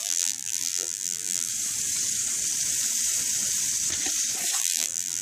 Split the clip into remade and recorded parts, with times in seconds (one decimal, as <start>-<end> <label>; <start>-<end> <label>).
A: 0.0-1.5 remade; 1.5-4.6 recorded; 4.6-5.2 remade